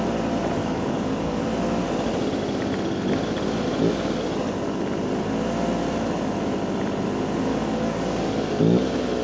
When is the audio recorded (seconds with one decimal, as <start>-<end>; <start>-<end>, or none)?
0.0-0.6; 1.4-7.5; 8.2-9.2

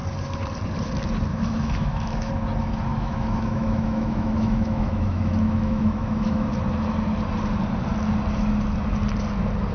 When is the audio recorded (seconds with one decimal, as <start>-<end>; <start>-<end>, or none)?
0.0-1.3; 2.3-2.9; 6.5-9.7